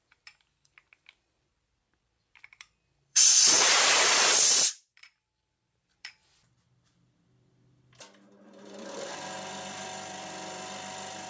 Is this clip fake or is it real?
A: fake